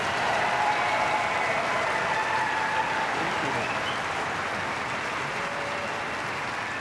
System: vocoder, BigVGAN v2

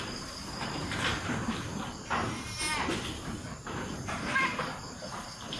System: vocoder, BigVGAN v2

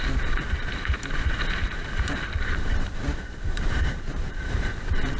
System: vocoder, BigVGAN v2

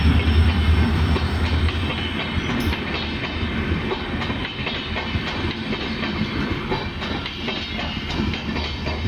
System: none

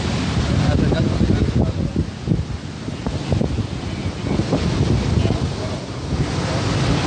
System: none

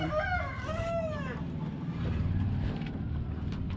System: none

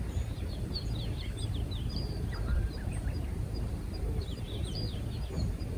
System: vocoder, BigVGAN v2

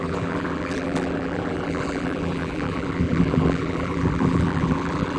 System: vocoder, BigVGAN v2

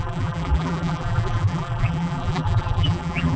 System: vocoder, BigVGAN v2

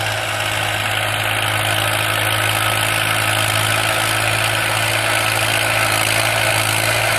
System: none